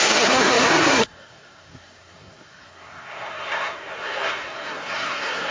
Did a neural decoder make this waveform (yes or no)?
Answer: yes